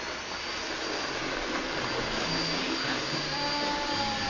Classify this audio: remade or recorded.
recorded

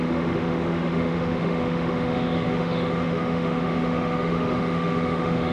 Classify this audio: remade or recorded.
remade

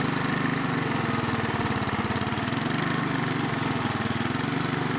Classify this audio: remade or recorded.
recorded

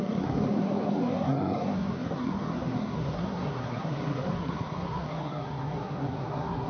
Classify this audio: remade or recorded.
remade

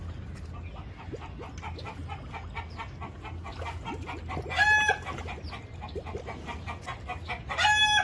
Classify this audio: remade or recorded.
recorded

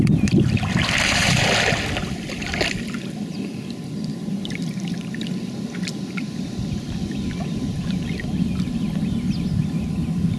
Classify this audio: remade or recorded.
recorded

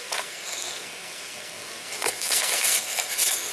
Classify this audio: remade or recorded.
remade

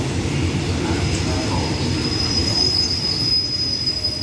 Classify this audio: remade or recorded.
recorded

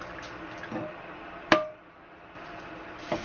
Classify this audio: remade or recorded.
recorded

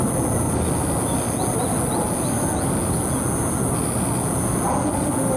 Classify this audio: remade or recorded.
recorded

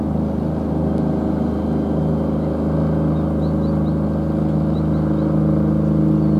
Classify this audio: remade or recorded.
recorded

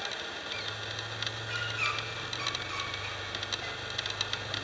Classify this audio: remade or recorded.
recorded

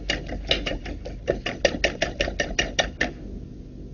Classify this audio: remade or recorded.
recorded